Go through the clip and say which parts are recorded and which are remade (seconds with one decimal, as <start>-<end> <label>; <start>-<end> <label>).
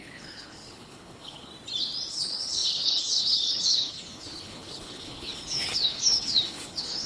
0.0-1.5 remade; 1.5-2.1 recorded; 2.1-7.1 remade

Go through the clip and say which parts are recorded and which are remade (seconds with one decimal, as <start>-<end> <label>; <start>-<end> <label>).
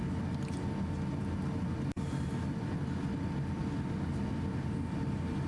0.0-5.5 recorded